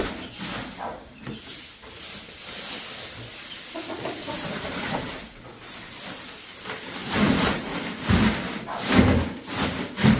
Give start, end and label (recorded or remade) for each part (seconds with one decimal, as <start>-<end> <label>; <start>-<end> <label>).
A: 0.0-4.2 recorded; 4.2-5.4 remade; 5.4-7.0 recorded; 7.0-7.8 remade; 7.8-10.2 recorded